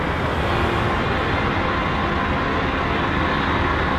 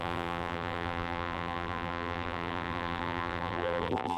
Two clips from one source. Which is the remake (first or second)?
second